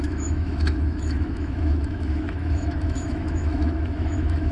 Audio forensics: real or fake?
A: fake